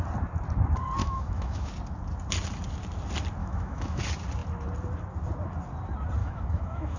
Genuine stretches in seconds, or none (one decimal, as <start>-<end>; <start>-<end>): 0.0-1.0; 1.7-3.4; 4.0-6.2